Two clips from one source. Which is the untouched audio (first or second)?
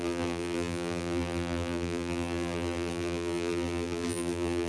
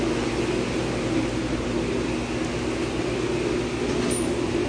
second